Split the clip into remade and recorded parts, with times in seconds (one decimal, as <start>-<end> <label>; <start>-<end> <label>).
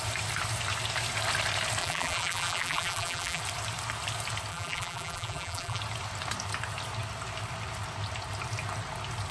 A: 0.0-1.8 recorded; 1.8-3.4 remade; 3.4-4.5 recorded; 4.5-5.8 remade; 5.8-9.3 recorded